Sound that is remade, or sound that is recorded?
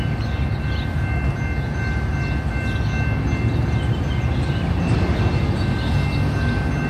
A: recorded